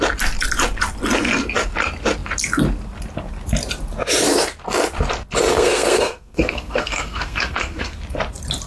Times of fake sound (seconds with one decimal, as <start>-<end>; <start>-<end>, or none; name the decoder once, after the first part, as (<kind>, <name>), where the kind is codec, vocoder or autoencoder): 5.5-8.0 (codec, SNAC)